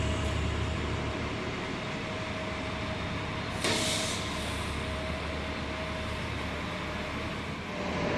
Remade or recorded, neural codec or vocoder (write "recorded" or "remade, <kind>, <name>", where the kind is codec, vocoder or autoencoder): recorded